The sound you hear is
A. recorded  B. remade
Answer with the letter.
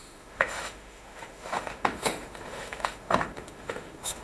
B